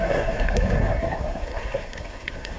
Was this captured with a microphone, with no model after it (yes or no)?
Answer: no